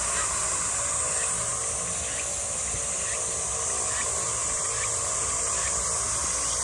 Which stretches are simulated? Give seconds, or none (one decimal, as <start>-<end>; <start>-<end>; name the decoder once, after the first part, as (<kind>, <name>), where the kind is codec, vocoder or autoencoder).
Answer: none